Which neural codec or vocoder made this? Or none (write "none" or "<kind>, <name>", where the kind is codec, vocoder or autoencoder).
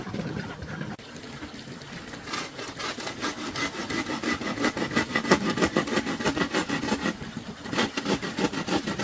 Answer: none